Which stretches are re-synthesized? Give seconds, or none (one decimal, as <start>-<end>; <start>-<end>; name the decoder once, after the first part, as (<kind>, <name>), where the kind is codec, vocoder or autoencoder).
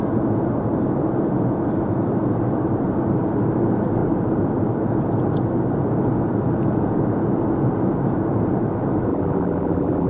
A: 9.1-10.1 (vocoder, BigVGAN v2)